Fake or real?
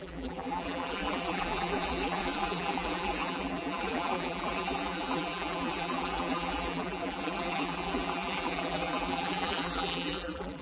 fake